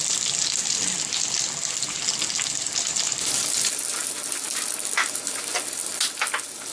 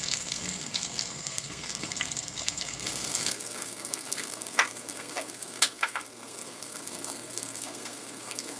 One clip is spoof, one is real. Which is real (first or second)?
first